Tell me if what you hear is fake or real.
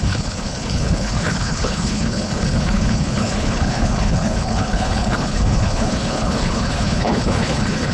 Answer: fake